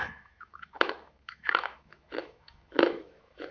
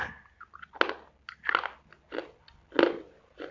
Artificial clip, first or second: first